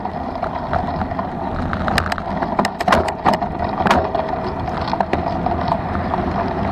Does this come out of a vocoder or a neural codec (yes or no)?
no